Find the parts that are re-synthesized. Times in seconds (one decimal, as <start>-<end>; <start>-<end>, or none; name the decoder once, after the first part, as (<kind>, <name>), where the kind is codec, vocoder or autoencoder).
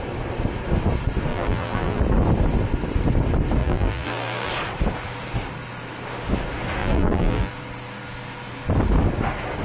1.3-2.0 (vocoder, BigVGAN v2); 3.6-4.5; 6.8-7.5